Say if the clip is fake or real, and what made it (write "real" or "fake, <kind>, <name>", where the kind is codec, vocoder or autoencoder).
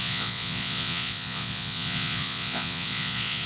fake, vocoder, Vocos